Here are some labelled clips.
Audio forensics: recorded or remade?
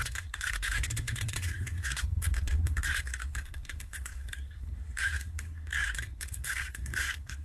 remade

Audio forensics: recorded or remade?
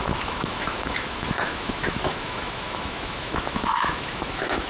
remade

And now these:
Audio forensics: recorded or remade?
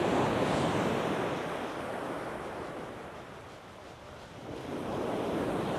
recorded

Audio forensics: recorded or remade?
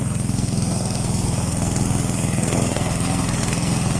remade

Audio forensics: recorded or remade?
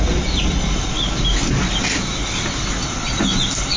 recorded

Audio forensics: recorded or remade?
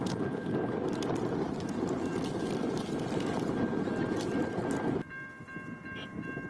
recorded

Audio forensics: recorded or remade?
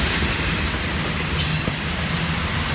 recorded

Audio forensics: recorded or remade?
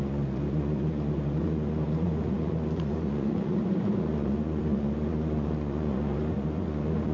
remade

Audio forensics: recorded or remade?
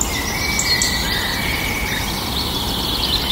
recorded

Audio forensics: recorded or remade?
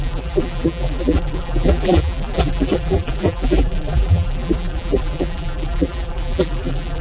remade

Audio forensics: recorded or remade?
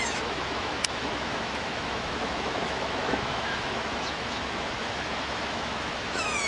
remade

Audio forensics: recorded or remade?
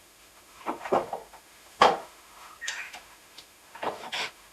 remade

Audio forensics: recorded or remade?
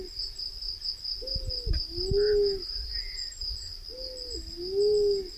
recorded